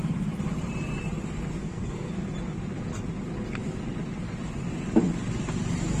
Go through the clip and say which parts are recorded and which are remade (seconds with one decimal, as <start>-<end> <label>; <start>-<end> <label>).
0.0-1.6 recorded; 1.6-2.1 remade; 2.1-6.0 recorded